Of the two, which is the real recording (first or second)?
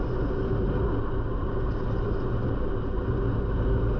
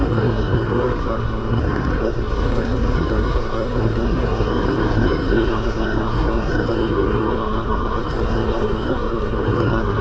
first